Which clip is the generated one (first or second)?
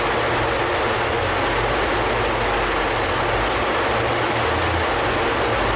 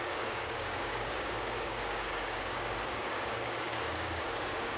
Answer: second